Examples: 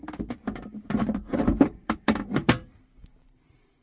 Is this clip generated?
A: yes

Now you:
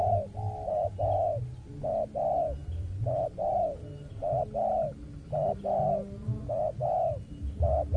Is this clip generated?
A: no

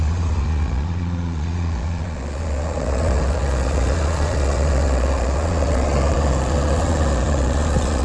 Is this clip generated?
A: yes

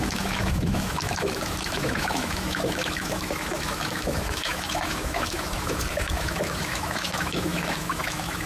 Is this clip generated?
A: yes